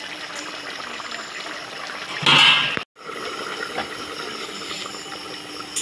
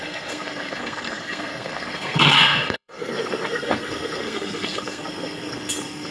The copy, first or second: second